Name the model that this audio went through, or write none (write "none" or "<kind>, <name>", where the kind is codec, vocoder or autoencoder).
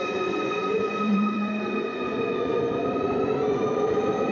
vocoder, Vocos